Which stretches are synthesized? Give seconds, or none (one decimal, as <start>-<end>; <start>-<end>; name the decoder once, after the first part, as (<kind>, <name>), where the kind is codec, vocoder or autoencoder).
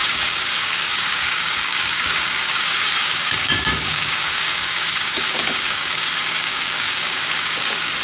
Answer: 0.0-8.0 (codec, DAC)